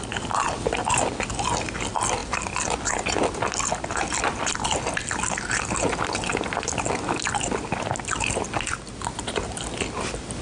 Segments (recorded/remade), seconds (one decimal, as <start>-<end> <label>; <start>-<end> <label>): 0.0-10.4 recorded